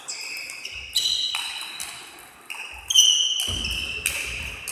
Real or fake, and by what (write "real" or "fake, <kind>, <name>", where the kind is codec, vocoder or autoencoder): real